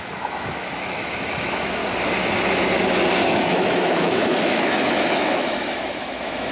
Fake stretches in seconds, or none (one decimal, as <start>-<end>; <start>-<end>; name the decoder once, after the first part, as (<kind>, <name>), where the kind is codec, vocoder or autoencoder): 0.0-1.8 (autoencoder, DAC-VAE); 3.3-6.5